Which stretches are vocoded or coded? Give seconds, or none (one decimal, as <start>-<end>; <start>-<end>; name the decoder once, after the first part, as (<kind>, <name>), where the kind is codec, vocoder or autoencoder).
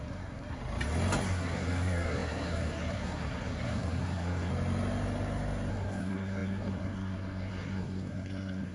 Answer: 0.0-0.6 (codec, SNAC); 1.2-4.5; 5.7-8.7